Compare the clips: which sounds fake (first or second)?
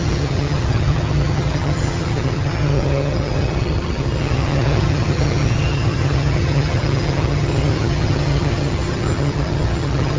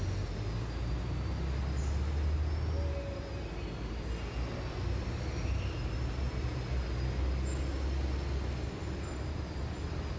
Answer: first